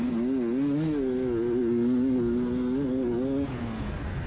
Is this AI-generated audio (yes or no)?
no